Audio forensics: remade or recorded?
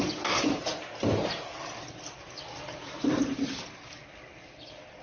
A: recorded